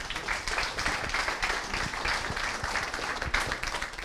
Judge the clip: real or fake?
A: fake